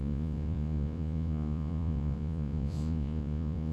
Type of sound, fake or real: fake